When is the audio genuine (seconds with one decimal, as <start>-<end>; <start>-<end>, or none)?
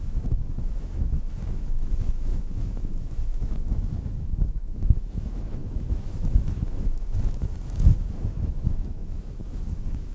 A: none